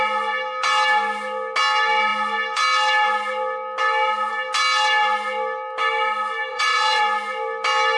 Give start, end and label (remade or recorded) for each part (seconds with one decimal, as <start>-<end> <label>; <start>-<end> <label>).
0.0-6.5 recorded; 6.5-7.0 remade; 7.0-8.0 recorded